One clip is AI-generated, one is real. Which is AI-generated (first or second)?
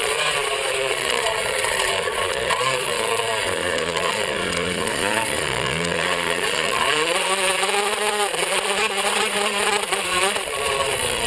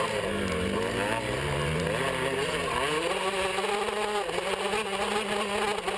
first